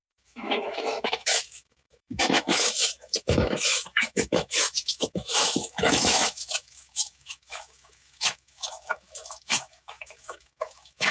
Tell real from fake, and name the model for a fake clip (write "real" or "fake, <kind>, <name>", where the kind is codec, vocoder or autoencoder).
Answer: fake, autoencoder, DAC-VAE